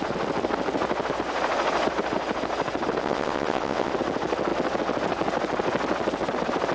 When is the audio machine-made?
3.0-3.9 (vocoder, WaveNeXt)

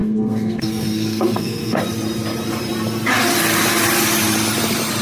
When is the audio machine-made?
0.0-1.8 (codec, SNAC)

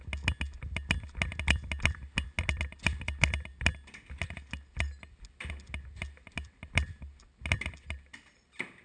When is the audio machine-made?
none

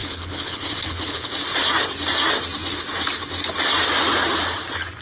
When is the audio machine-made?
0.0-1.3 (codec, HILCodec)

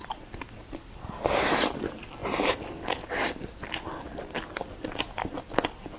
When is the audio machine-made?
none

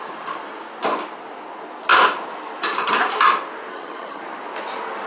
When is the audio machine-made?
3.7-4.2 (vocoder, HiFi-GAN)

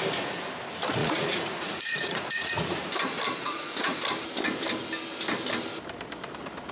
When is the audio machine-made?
1.0-2.9 (vocoder, Vocos); 3.4-4.0